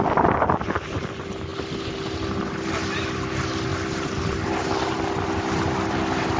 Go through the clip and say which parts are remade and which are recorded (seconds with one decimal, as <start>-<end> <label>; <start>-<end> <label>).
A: 0.0-6.4 recorded